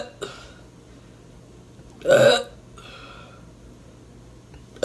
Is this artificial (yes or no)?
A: no